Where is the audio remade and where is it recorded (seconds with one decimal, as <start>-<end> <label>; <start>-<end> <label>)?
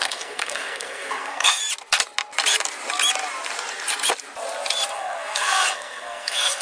0.0-1.6 remade; 1.6-4.9 recorded; 4.9-6.6 remade